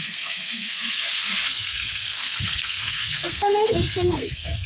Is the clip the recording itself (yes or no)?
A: no